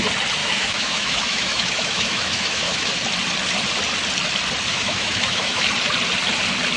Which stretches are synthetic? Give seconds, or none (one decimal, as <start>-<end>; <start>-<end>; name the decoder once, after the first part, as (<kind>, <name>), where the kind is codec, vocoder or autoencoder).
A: 0.4-2.9 (autoencoder, DAC-VAE); 4.7-5.6